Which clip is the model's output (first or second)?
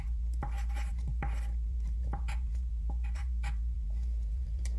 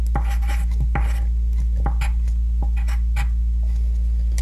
first